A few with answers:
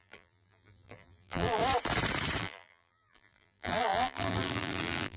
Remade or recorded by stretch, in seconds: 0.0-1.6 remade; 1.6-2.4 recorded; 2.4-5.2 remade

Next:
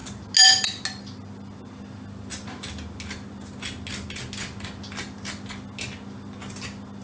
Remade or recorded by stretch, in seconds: 0.0-7.0 recorded

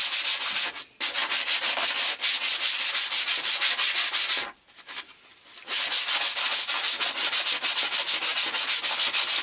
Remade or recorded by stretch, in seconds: 0.0-9.4 recorded

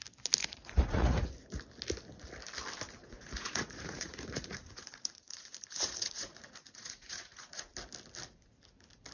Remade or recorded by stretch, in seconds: 0.0-0.4 recorded; 0.4-1.3 remade; 1.3-3.0 recorded; 3.0-7.7 remade; 7.7-9.1 recorded